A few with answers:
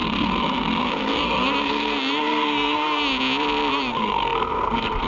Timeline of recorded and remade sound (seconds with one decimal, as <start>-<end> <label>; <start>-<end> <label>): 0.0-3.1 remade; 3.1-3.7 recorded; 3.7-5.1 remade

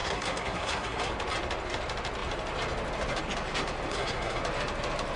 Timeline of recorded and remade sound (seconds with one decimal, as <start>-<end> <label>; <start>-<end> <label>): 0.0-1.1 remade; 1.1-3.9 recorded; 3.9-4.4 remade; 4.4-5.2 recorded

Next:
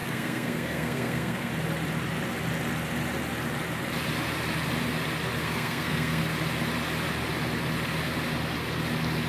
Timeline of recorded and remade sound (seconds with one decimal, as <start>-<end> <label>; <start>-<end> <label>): 0.0-1.5 remade; 1.5-5.4 recorded; 5.4-6.2 remade; 6.2-9.3 recorded